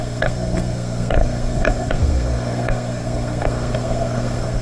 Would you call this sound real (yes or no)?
no